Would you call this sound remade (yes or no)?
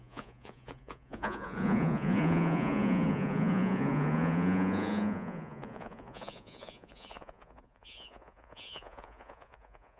yes